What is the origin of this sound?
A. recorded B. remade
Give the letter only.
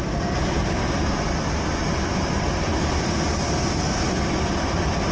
A